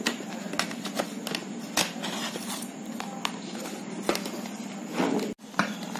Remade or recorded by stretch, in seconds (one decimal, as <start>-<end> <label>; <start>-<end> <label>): 0.0-6.0 recorded